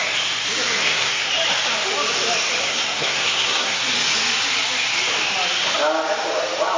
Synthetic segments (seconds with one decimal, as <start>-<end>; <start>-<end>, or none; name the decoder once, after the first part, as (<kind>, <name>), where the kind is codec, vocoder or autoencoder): 0.8-1.3 (codec, SNAC); 2.6-3.8